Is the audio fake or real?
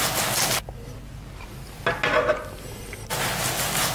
real